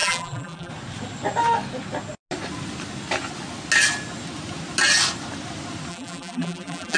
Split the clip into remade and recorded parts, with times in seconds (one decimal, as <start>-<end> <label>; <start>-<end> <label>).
0.0-0.7 remade; 0.7-5.9 recorded; 5.9-7.0 remade